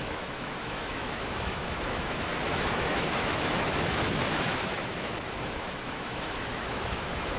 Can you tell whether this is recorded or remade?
remade